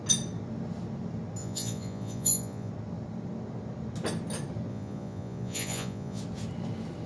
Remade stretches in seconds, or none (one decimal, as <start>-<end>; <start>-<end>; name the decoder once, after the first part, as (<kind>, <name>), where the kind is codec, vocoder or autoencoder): 1.4-2.7 (vocoder, Vocos); 4.7-6.2